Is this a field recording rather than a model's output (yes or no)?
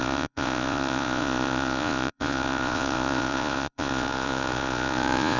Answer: no